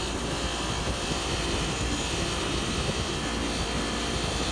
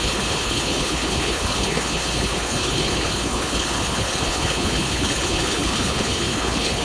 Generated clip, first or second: second